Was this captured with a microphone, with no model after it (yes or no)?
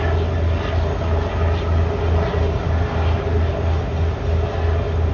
yes